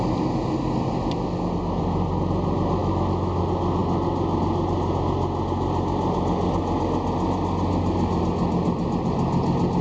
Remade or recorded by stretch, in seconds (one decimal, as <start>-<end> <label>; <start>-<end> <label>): 0.0-2.8 recorded; 2.8-3.4 remade; 3.4-9.8 recorded